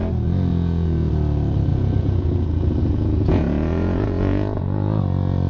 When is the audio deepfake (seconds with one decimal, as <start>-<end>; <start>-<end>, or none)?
0.5-1.1; 1.7-5.0

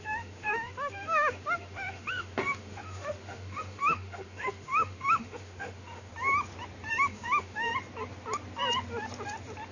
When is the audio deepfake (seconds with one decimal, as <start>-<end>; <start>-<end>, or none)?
0.0-6.1; 6.9-7.7

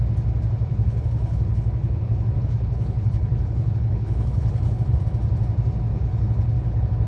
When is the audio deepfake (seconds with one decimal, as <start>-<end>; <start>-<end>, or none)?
0.7-5.0; 5.9-7.1

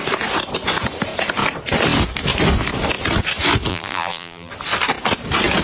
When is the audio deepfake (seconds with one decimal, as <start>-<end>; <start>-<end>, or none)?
3.7-4.5

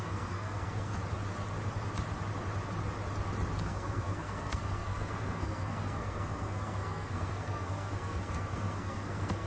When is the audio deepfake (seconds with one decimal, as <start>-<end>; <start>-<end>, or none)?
0.0-1.0; 3.6-9.5

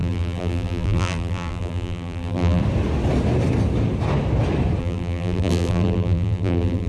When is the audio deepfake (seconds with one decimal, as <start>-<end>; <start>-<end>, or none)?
0.0-2.6; 4.8-6.9

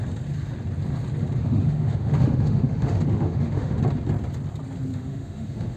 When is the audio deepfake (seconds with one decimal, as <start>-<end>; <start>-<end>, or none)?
1.4-3.8; 4.9-5.8

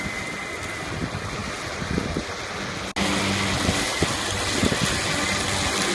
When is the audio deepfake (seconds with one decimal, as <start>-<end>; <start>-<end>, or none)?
none